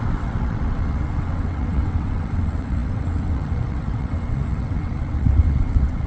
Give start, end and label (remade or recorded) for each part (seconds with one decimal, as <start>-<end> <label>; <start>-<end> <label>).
0.0-6.1 remade